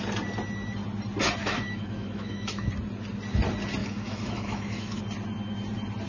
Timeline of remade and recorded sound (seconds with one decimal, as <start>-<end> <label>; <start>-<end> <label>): 0.0-1.4 recorded; 1.4-2.7 remade; 2.7-3.8 recorded; 3.8-5.0 remade; 5.0-6.1 recorded